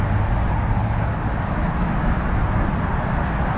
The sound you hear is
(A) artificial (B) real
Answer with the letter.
B